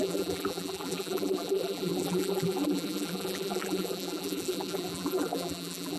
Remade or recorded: remade